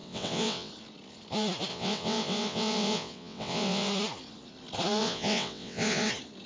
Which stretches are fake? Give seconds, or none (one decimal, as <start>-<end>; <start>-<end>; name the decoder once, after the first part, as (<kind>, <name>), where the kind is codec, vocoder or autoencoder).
0.0-0.7 (vocoder, WaveNeXt); 1.7-3.9; 5.0-6.1